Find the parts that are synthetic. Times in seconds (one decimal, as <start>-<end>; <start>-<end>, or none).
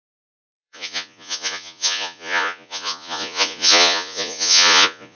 0.0-5.2